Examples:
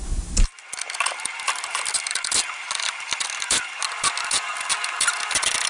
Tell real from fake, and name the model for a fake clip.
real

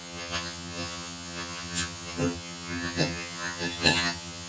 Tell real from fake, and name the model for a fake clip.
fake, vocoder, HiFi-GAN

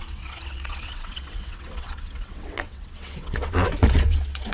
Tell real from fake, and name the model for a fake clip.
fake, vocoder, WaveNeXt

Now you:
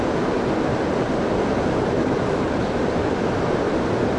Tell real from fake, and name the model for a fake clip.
real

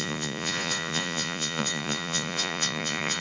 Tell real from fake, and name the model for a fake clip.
fake, vocoder, Vocos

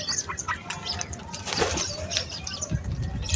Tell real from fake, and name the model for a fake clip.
real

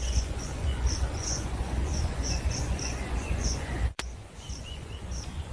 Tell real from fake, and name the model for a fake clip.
fake, vocoder, Vocos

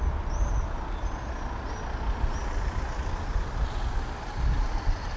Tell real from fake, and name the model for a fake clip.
real